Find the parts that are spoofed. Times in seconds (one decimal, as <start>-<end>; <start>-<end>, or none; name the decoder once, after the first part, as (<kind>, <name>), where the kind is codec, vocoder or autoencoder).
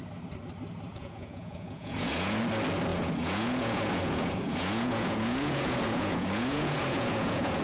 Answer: 0.9-2.4 (vocoder, Vocos); 2.9-7.6